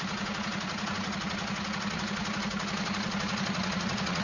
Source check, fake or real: fake